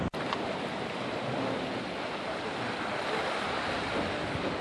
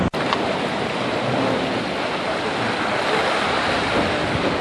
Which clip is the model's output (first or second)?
first